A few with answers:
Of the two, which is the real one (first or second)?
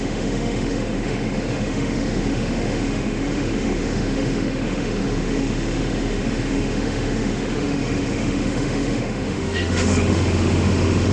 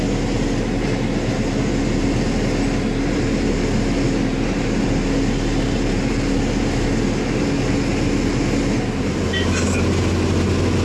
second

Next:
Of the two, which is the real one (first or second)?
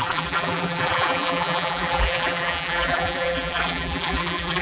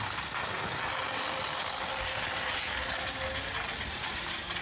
second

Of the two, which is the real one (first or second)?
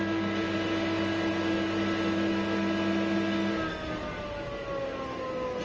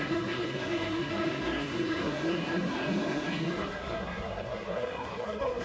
first